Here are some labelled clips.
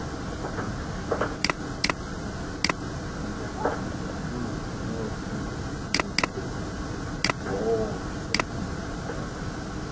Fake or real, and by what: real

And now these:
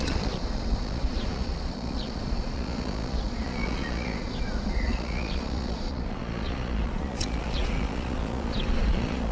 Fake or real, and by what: fake, vocoder, Vocos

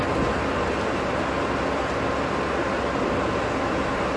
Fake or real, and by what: real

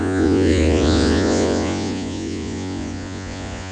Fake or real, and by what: fake, vocoder, Vocos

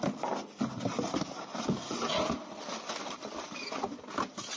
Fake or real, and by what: real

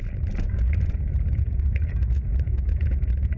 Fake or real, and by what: fake, vocoder, Vocos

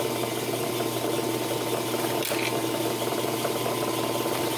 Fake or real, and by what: real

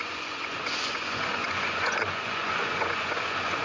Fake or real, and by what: fake, vocoder, Vocos